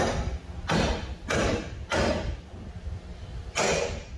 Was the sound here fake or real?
real